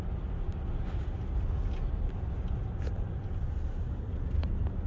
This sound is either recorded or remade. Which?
recorded